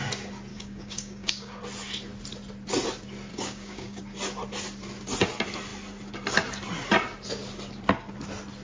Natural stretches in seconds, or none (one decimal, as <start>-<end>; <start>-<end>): 0.0-0.5; 1.6-3.3; 4.0-8.6